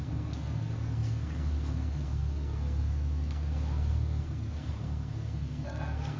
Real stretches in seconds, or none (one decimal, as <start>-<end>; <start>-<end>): none